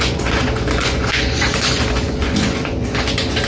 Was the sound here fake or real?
fake